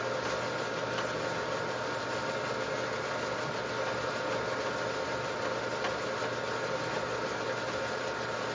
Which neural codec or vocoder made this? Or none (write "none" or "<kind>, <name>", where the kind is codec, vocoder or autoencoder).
none